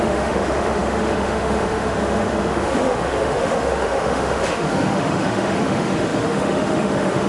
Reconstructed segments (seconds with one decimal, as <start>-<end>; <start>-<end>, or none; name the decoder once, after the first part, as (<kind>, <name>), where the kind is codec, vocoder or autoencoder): 0.0-7.3 (autoencoder, DAC-VAE)

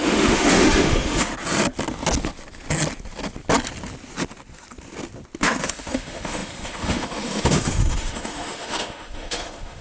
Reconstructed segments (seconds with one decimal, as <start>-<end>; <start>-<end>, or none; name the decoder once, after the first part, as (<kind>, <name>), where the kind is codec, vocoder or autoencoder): 0.0-1.3 (autoencoder, DAC-VAE); 5.4-9.8

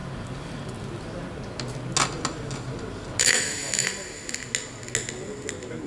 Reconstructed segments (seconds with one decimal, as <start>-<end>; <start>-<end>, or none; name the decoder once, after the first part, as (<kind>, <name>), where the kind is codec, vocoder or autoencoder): 3.2-3.9 (autoencoder, DAC-VAE)

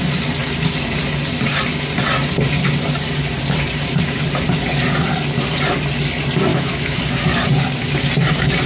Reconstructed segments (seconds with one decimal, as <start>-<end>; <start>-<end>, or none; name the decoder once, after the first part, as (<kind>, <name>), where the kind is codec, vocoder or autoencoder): 6.5-7.0 (autoencoder, DAC-VAE)

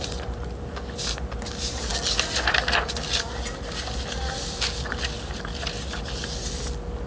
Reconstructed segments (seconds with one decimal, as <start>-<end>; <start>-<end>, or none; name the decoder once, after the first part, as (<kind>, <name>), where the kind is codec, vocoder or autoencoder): none

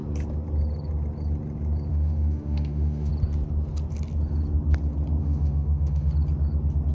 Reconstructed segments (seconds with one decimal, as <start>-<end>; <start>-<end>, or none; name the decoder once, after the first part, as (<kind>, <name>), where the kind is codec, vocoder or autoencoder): 1.9-3.1 (autoencoder, DAC-VAE); 5.2-6.1